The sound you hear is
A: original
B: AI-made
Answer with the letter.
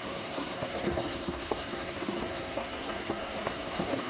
B